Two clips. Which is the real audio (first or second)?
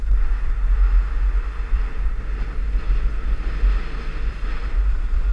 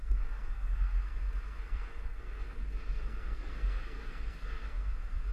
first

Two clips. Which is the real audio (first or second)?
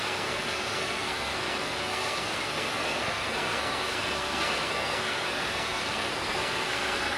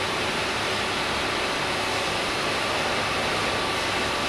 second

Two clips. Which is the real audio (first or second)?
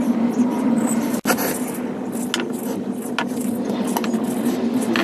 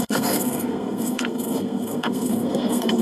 first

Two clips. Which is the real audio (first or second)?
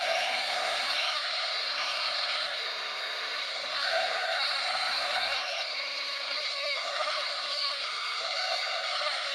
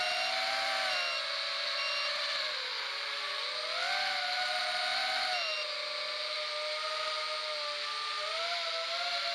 second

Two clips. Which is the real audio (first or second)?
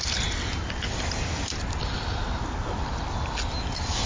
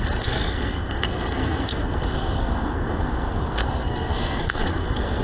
first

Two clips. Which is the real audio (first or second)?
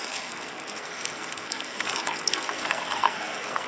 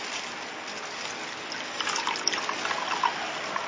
second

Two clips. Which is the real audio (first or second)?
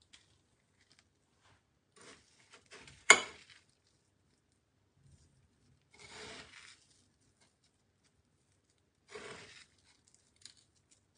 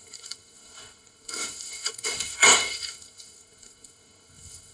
first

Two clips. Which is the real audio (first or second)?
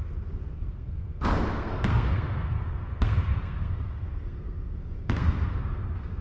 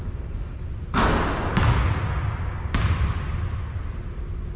second